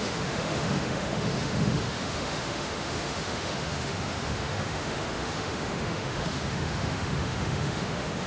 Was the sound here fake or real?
fake